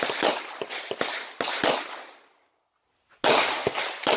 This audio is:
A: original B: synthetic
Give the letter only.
A